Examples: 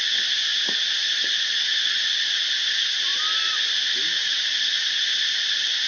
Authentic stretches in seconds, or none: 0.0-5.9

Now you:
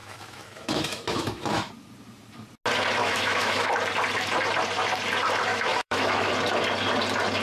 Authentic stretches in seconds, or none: 1.7-3.0; 3.7-5.5; 6.3-7.4

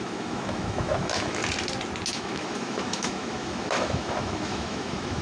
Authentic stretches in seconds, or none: 1.4-2.1

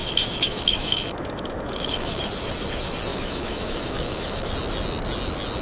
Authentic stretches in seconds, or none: 2.2-3.1; 4.5-5.6